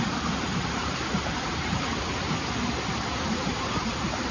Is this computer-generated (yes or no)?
yes